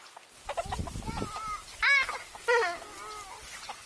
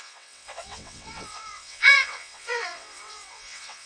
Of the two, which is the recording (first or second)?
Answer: first